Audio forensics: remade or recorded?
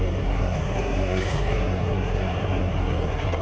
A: remade